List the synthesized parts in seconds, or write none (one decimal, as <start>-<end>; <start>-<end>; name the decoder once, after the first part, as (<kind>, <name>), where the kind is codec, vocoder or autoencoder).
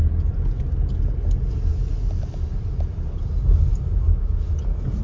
none